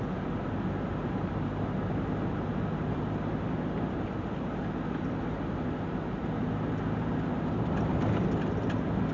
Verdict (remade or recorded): recorded